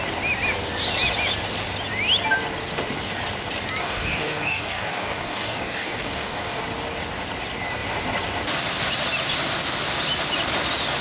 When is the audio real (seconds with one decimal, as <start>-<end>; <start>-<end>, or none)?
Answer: 0.0-3.8; 6.6-11.0